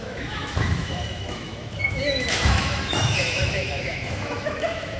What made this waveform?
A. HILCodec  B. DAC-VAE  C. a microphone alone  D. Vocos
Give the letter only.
B